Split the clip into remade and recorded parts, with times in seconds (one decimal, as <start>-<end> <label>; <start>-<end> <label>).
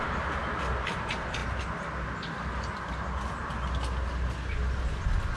0.0-5.4 recorded